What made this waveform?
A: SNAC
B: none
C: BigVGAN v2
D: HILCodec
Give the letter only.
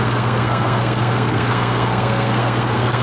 A